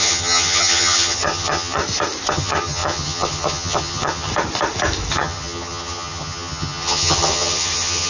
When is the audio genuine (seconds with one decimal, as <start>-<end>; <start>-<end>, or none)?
1.8-2.3; 4.3-5.1